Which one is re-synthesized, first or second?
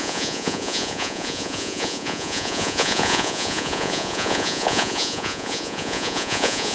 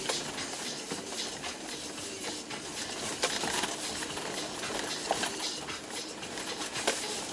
first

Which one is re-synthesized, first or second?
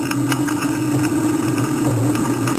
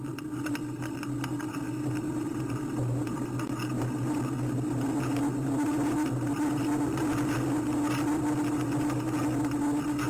first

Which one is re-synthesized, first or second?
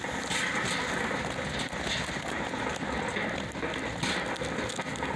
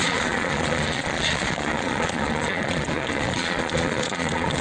second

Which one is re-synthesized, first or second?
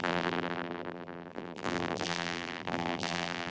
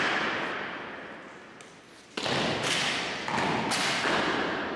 first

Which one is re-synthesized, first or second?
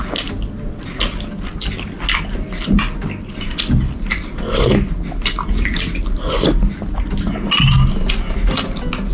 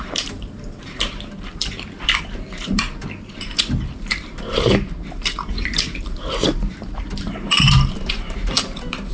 second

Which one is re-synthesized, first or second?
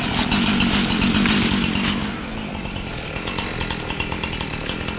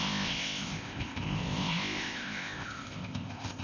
second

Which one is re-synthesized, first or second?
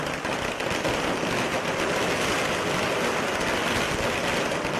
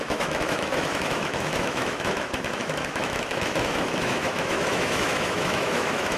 second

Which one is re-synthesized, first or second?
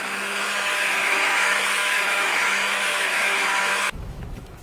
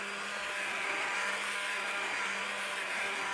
first